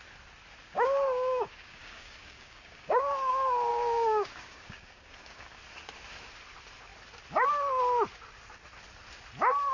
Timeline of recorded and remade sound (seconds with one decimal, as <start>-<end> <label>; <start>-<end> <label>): 0.0-0.6 recorded; 0.6-3.3 remade; 3.3-3.7 recorded; 3.7-5.5 remade; 5.5-9.7 recorded